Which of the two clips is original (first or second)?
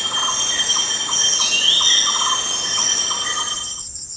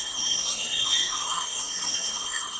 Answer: first